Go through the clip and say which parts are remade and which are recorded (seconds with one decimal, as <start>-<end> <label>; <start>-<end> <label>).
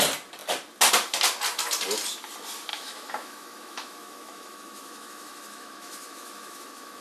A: 0.0-2.7 recorded; 2.7-7.0 remade